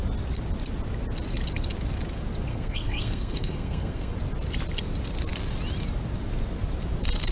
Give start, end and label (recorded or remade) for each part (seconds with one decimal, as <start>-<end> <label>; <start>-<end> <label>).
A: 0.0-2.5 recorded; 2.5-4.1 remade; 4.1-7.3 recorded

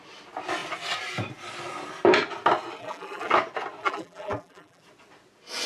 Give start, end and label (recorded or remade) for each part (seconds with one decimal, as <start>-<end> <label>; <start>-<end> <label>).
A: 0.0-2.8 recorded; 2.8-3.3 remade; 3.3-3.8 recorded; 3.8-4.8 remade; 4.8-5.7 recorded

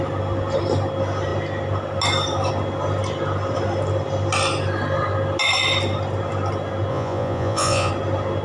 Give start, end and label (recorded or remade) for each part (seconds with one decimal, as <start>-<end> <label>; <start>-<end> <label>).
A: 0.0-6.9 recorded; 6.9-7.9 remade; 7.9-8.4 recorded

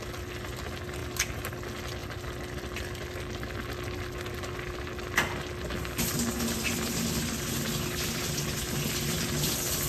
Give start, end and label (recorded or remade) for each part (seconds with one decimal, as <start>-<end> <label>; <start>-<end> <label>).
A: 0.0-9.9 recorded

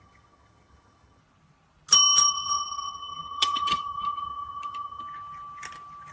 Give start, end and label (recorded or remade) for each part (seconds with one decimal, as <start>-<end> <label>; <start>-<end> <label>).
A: 0.0-1.2 remade; 1.2-2.3 recorded; 2.3-5.0 remade; 5.0-6.1 recorded

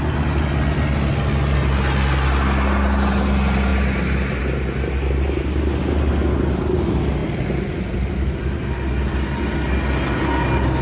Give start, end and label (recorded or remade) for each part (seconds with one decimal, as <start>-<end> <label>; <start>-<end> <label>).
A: 0.0-7.2 recorded; 7.2-8.4 remade; 8.4-10.8 recorded

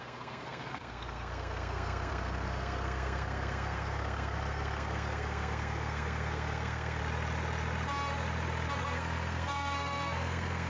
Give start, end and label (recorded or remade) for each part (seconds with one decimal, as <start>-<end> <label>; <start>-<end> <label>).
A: 0.0-7.0 remade; 7.0-8.8 recorded; 8.8-10.7 remade

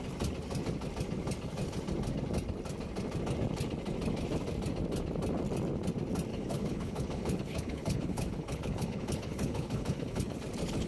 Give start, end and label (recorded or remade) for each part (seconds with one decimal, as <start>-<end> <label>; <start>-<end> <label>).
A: 0.0-6.3 recorded; 6.3-10.4 remade; 10.4-10.9 recorded